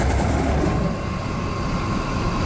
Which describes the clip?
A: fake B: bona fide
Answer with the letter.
B